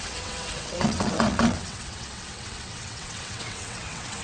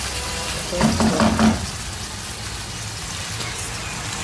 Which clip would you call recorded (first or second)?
second